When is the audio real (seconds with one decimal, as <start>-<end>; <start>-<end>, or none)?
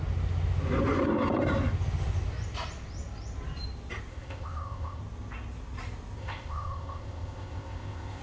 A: 0.0-4.1; 5.0-6.2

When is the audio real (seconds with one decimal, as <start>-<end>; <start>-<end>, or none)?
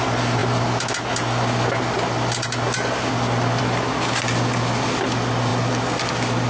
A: 0.0-6.5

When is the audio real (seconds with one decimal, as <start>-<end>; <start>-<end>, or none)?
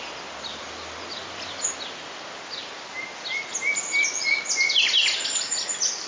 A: 0.0-6.1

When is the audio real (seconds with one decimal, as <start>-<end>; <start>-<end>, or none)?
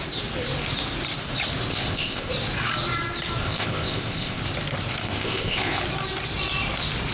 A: 0.0-1.7; 2.3-3.4; 4.4-5.0; 5.8-7.1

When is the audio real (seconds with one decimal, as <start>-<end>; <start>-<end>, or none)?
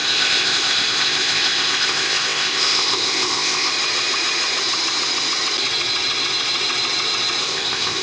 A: 3.7-7.4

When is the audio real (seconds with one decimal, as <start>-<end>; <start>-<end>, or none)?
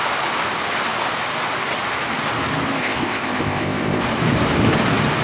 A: 0.0-2.8; 4.0-5.2